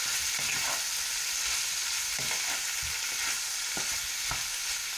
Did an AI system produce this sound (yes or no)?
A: no